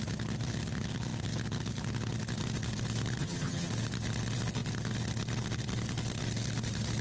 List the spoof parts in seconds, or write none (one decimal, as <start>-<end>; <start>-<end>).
3.2-3.7